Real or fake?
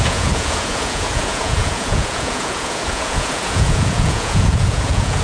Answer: fake